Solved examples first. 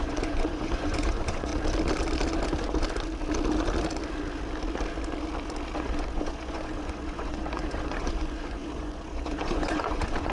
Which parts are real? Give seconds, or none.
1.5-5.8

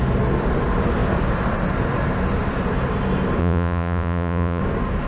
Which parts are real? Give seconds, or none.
0.0-3.4; 4.6-5.1